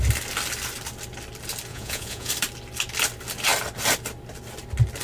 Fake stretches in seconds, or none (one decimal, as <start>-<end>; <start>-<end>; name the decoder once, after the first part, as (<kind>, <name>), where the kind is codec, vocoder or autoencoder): 1.7-2.3 (vocoder, Vocos)